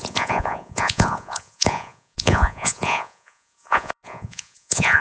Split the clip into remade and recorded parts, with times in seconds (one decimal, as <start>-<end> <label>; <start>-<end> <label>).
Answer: 0.0-5.0 remade